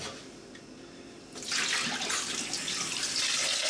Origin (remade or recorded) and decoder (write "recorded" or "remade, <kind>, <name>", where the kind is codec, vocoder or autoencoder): recorded